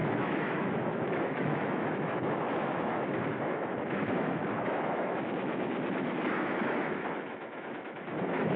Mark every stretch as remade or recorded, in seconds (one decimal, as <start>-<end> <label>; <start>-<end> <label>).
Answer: 0.0-8.6 remade